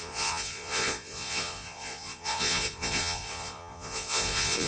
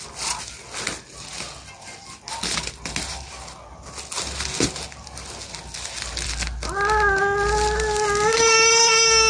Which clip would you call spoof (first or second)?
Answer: first